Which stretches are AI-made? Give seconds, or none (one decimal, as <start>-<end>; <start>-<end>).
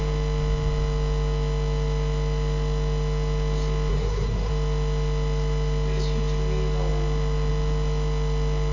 3.9-4.5